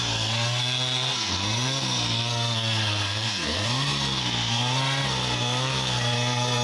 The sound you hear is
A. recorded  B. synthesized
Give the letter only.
B